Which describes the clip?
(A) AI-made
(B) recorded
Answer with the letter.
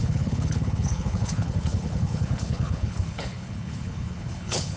A